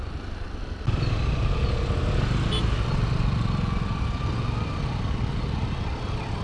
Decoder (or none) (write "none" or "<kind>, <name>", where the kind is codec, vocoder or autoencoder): none